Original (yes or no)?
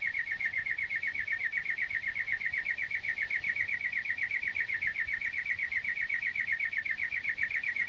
no